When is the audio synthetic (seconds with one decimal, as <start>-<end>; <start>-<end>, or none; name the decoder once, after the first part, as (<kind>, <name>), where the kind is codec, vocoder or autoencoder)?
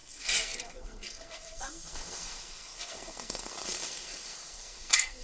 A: 0.0-5.2 (codec, SNAC)